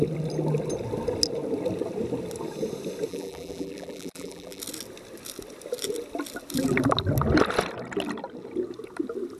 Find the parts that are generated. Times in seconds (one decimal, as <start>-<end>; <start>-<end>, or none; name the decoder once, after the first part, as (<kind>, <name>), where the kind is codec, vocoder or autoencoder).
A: 3.1-4.6 (vocoder, BigVGAN v2)